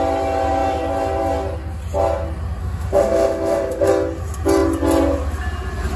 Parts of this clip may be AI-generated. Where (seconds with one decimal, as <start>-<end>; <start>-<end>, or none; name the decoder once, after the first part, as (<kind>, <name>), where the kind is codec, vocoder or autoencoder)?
2.6-3.9 (autoencoder, DAC-VAE)